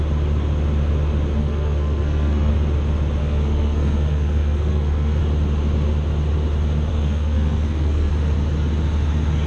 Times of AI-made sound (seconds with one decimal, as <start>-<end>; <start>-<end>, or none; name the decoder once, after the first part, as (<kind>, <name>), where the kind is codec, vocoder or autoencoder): 1.4-2.5 (codec, SNAC); 3.2-5.2; 6.9-8.1